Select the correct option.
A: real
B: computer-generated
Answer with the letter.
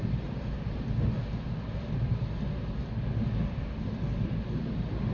A